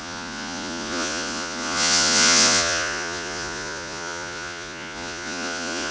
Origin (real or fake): fake